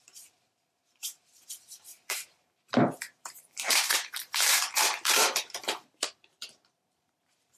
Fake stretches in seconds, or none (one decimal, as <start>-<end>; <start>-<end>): 0.0-7.6